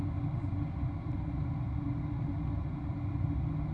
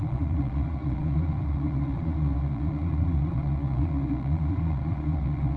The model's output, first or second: second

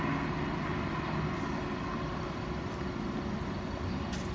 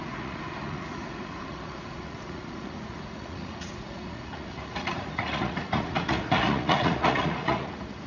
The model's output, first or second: second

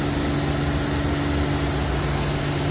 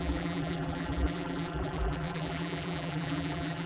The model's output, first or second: second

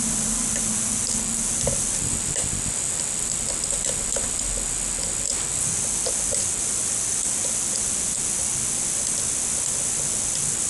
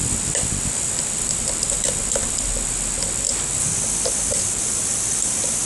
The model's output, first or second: second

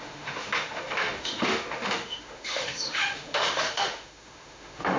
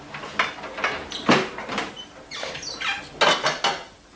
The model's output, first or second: first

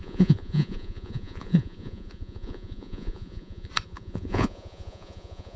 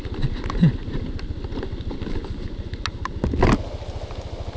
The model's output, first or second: first